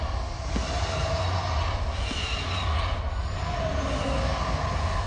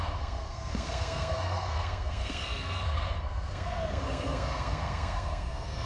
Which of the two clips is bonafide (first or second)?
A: first